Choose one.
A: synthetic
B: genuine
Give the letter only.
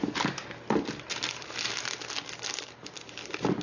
B